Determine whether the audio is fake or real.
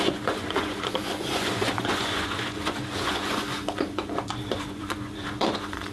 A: fake